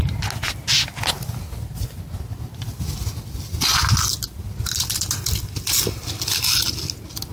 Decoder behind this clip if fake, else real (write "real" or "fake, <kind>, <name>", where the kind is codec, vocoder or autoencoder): real